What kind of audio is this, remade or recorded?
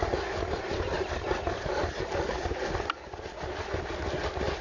recorded